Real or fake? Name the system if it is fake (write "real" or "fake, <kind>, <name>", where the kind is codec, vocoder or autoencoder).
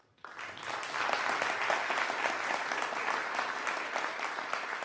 real